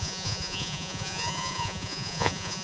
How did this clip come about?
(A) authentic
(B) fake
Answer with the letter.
B